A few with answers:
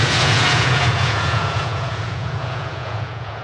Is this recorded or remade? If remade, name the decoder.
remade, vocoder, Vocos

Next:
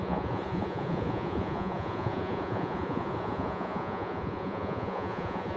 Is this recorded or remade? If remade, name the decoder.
remade, vocoder, Vocos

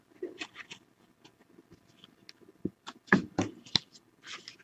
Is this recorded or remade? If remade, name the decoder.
recorded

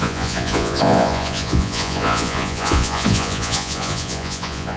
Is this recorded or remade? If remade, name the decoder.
remade, vocoder, Vocos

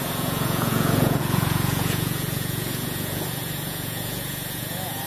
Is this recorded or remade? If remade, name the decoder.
remade, vocoder, Vocos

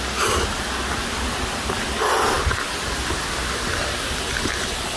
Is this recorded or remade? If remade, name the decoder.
recorded